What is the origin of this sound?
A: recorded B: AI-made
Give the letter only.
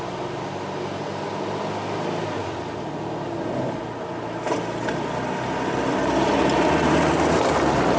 A